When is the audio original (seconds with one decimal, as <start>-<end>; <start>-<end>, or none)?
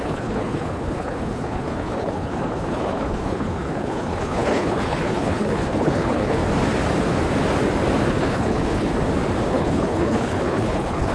6.4-8.1; 8.9-9.5